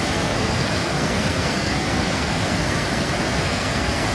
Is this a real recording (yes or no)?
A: no